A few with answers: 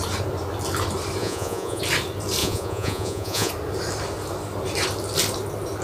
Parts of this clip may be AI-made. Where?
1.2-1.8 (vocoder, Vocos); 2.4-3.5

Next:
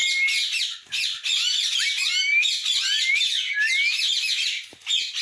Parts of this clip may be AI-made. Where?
none

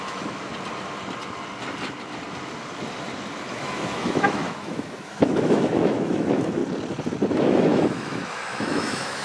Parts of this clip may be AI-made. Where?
0.0-0.5 (autoencoder, DAC-VAE); 3.5-6.6; 7.3-9.2

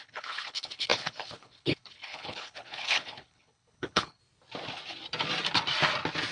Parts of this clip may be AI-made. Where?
0.0-4.2 (codec, HILCodec)

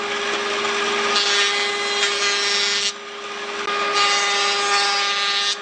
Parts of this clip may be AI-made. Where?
none

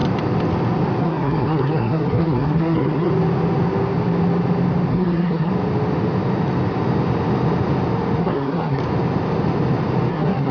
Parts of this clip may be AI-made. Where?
1.0-3.1 (codec, SNAC); 4.9-5.5; 8.2-8.8; 10.1-10.5

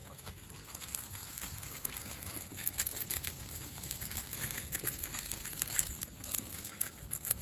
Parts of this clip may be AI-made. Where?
0.0-7.4 (codec, SNAC)